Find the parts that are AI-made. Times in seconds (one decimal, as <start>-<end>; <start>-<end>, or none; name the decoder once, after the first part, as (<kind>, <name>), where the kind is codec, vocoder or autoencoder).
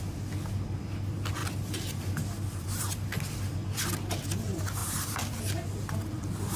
4.8-5.4 (vocoder, BigVGAN v2)